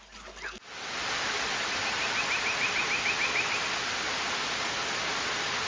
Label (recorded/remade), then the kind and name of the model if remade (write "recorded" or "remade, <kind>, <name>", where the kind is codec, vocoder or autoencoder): recorded